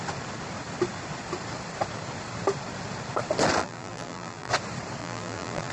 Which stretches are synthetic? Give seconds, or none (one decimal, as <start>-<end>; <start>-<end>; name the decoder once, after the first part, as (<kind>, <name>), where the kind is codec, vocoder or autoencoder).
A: 3.6-4.5 (vocoder, BigVGAN v2); 5.0-5.7